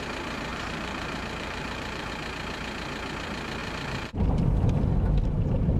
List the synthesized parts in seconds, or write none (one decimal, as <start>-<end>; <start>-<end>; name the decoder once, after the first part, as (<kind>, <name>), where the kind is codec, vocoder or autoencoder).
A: 0.5-2.1 (vocoder, BigVGAN v2); 3.6-4.4